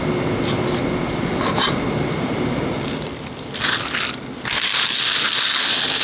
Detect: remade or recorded recorded